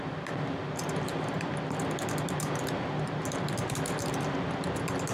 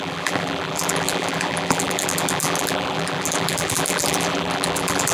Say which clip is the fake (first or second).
second